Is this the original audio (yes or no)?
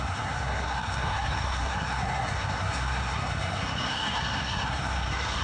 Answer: no